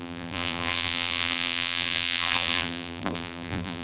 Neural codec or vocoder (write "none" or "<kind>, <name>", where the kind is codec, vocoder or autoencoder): vocoder, BigVGAN v2